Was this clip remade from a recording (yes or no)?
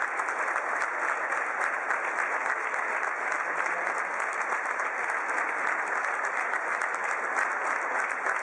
no